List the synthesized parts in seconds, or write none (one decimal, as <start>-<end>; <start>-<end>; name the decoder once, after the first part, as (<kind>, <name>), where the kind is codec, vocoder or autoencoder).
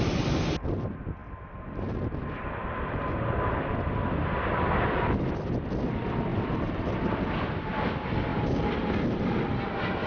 6.3-7.8 (vocoder, BigVGAN v2)